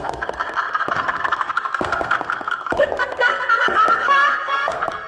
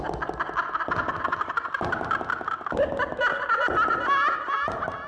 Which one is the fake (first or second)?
first